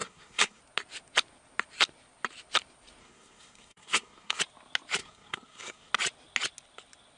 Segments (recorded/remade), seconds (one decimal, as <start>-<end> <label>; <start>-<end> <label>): 0.0-0.6 remade; 0.6-3.0 recorded; 3.0-4.4 remade; 4.4-5.0 recorded; 5.0-5.9 remade; 5.9-7.2 recorded